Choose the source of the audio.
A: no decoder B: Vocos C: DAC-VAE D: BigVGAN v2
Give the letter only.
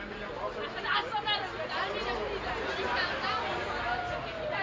A